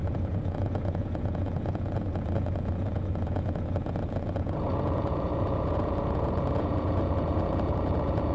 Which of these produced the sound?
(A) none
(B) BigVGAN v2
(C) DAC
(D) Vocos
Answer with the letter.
D